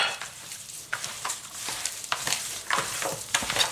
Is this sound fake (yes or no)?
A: yes